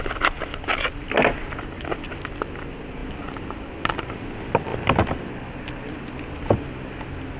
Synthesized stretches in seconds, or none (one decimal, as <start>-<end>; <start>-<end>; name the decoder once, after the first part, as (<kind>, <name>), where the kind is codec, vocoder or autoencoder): none